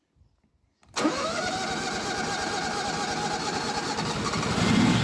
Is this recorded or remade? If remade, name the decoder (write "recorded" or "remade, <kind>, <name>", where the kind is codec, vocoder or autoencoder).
recorded